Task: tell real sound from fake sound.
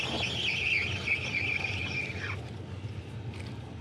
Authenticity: real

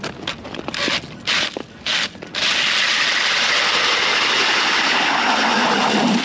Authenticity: real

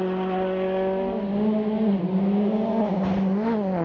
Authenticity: real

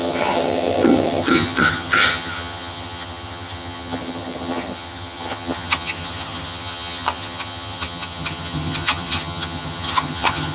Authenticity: fake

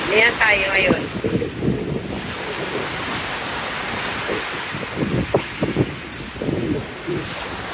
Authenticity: real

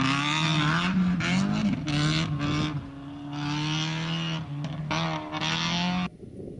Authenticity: real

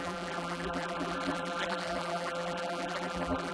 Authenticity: fake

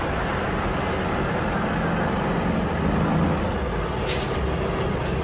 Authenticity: real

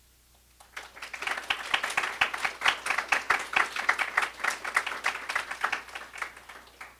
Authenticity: real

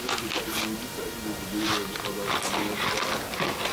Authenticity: real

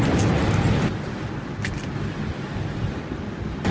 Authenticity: real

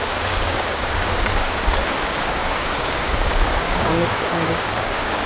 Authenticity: fake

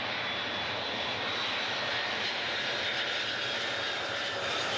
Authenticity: real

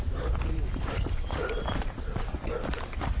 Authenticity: fake